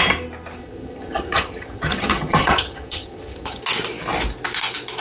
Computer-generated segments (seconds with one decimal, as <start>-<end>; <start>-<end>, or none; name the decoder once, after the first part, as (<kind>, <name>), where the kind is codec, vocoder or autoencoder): 0.6-3.6 (vocoder, HiFi-GAN)